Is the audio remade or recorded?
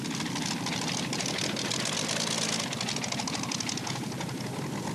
recorded